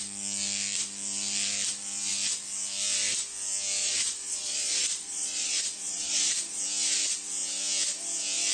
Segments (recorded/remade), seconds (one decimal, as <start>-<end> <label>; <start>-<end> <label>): 0.0-3.8 recorded; 3.8-6.6 remade; 6.6-8.5 recorded